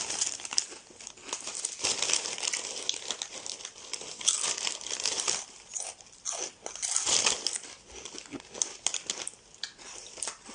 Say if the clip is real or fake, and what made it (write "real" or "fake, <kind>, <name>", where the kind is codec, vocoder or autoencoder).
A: real